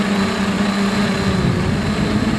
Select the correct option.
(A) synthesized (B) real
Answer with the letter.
B